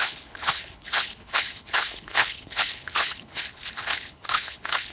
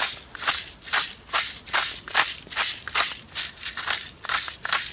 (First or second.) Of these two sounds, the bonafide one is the second